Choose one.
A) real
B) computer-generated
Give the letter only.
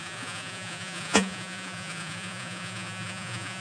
B